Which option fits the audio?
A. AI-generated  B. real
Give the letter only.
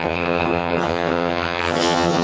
A